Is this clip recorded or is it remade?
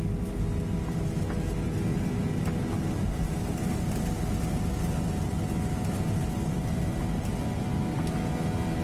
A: recorded